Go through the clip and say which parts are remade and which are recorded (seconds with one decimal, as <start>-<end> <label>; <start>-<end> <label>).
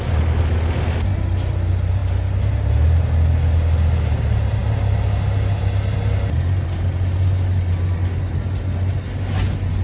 0.0-9.8 recorded